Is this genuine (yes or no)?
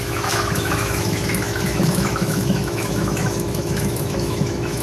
no